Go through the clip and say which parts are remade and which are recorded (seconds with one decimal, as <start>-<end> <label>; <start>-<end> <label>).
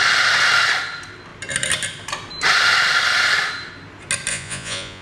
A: 0.0-4.3 recorded; 4.3-5.0 remade